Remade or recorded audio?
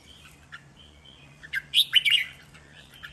remade